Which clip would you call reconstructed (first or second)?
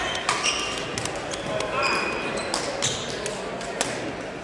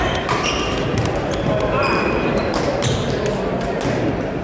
second